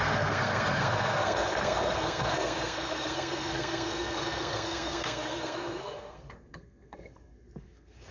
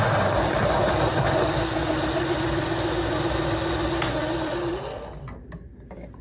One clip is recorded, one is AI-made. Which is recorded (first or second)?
second